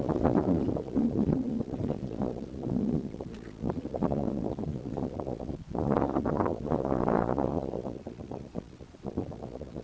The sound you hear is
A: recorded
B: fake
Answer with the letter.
B